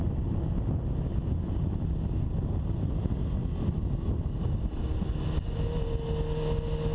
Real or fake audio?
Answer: real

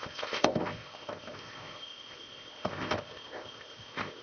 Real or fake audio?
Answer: fake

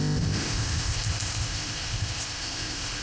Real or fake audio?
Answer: fake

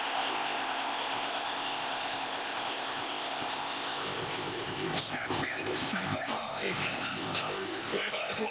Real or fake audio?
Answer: fake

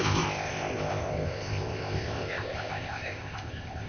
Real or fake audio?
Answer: fake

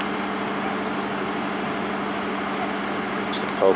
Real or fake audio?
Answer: real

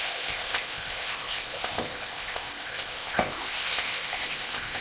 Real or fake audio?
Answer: fake